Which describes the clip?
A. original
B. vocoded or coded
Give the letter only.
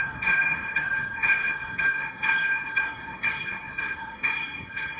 B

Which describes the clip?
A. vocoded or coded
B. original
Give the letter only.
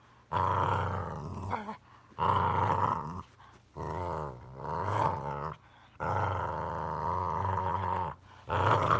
B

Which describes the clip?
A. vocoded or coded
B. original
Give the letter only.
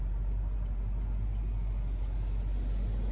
B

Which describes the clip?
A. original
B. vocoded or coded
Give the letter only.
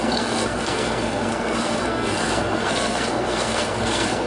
B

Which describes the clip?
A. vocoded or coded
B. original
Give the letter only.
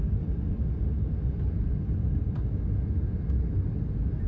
B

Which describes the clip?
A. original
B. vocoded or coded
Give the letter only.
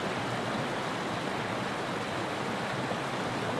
A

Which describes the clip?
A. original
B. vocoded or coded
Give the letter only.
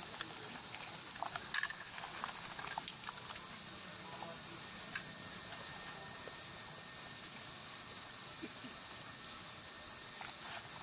A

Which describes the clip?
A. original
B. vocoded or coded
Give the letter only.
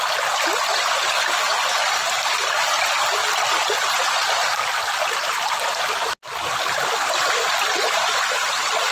A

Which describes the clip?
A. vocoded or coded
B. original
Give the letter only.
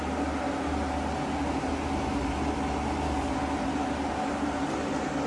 B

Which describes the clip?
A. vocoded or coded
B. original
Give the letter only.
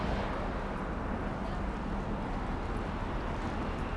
B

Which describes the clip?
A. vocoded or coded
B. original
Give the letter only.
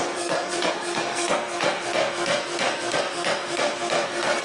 A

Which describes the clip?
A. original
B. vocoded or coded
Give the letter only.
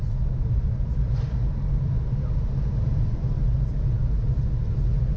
A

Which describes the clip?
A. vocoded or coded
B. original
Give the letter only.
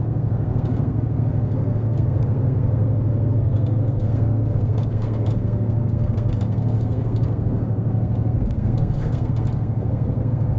A